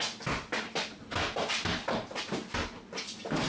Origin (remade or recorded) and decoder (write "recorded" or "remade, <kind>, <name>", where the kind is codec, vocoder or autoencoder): recorded